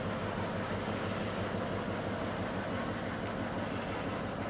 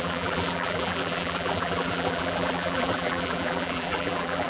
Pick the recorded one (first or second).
first